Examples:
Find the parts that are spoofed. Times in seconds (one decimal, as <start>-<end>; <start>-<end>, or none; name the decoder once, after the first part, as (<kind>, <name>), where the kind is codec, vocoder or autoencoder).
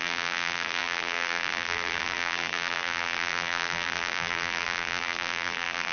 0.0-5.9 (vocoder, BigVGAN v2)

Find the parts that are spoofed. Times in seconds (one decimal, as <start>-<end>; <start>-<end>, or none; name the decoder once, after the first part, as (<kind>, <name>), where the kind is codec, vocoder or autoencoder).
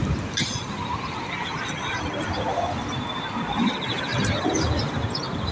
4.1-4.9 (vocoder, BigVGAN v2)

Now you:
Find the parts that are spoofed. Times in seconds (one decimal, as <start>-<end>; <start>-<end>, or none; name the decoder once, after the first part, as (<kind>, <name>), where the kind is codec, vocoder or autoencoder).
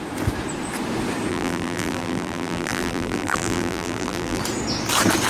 1.3-4.4 (vocoder, BigVGAN v2)